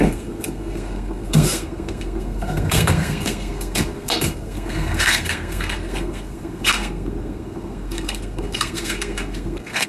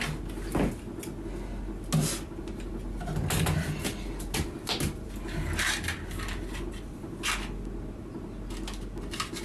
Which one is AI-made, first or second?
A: first